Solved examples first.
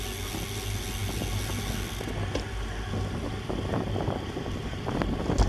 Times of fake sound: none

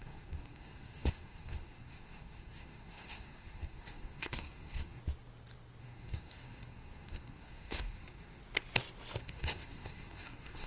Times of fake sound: 0.0-5.0; 5.8-8.4; 9.2-10.7

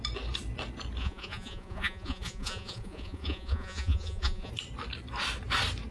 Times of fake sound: 1.0-4.5